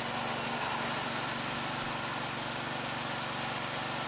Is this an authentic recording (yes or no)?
yes